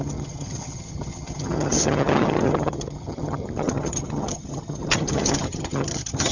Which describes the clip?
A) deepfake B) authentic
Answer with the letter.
A